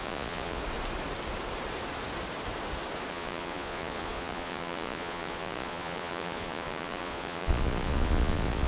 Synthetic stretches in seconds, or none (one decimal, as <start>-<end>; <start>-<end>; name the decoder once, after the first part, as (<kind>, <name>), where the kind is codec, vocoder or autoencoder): 0.0-0.6 (vocoder, Vocos); 3.1-8.7